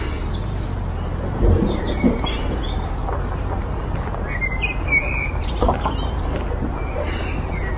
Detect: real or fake real